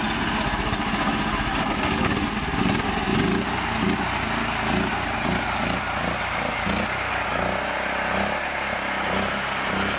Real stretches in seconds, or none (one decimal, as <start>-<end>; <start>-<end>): 0.0-10.0